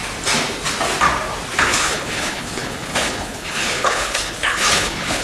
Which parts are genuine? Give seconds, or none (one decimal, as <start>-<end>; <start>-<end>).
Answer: 0.0-1.6

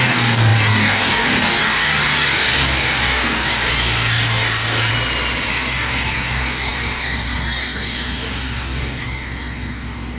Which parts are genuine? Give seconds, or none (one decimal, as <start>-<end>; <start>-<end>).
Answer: 4.9-5.5

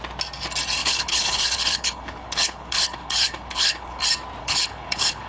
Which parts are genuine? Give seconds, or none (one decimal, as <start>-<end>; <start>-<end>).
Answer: 0.0-0.8; 4.0-4.4